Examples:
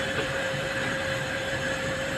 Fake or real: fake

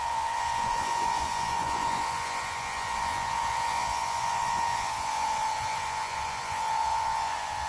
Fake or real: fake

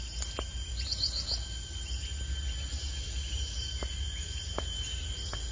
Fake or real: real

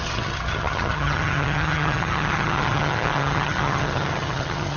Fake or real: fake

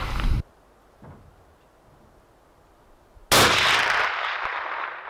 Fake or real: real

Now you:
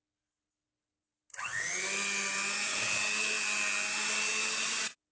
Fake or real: real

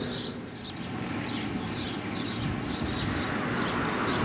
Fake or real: real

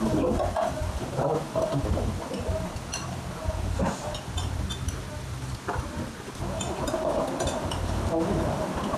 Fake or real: real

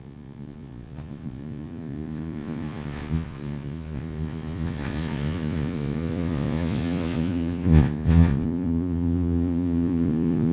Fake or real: fake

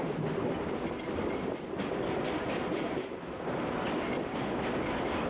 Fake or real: real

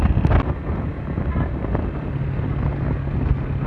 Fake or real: real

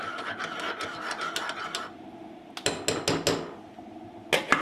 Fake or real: real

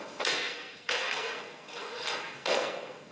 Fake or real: fake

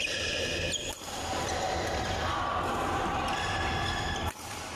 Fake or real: real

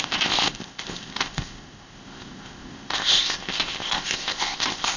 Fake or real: fake